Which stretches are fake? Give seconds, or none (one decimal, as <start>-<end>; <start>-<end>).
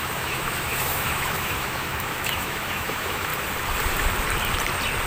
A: 0.0-3.3